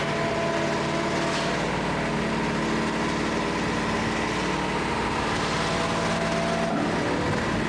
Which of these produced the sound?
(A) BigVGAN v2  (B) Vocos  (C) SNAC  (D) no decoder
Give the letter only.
D